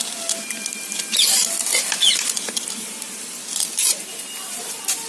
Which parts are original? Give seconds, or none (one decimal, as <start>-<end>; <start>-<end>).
0.0-0.9; 4.0-5.1